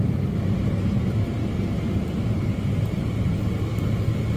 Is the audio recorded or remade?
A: recorded